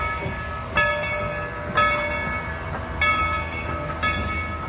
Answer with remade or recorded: recorded